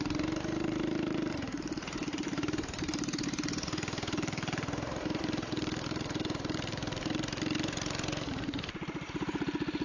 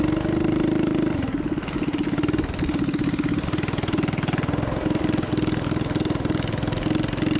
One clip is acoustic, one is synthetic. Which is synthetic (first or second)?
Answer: first